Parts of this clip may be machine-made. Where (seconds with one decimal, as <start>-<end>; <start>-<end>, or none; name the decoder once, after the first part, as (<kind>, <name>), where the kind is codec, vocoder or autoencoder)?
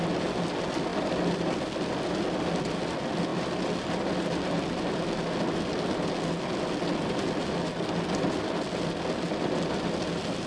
none